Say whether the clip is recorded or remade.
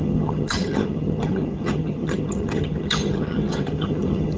remade